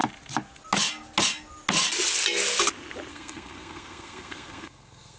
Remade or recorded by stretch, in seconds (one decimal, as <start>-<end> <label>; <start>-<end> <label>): 0.0-3.1 recorded; 3.1-5.2 remade